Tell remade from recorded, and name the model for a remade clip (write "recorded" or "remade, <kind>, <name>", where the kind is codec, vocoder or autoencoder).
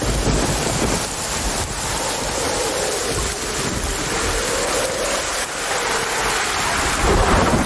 recorded